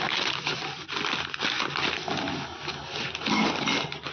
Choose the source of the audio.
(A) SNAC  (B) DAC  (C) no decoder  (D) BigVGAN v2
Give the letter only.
C